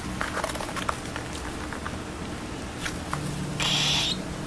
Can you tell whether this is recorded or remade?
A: recorded